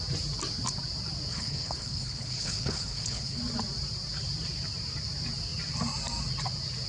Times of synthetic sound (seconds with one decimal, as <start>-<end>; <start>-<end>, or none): 1.3-3.4